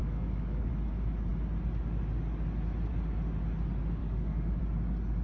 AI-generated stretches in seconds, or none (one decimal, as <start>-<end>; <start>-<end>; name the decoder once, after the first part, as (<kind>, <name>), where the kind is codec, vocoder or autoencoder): 0.0-0.7 (codec, DAC); 4.0-4.6